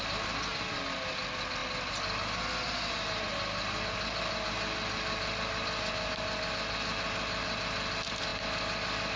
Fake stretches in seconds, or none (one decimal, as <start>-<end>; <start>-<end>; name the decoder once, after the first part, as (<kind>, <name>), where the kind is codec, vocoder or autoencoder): none